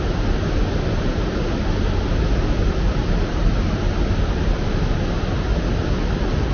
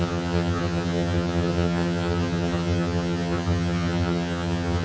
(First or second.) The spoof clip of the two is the second